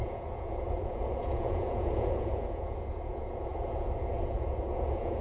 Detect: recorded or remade remade